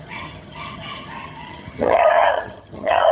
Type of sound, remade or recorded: remade